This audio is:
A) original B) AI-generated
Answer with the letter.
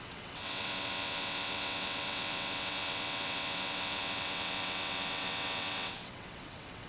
B